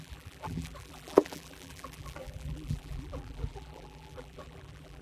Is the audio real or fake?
fake